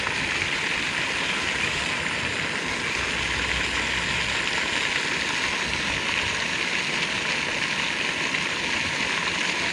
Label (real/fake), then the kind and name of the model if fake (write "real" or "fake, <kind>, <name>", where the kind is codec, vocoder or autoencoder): real